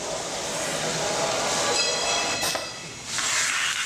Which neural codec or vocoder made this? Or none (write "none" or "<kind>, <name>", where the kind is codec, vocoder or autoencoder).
none